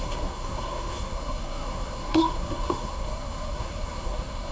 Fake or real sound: fake